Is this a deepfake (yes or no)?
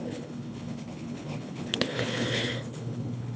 yes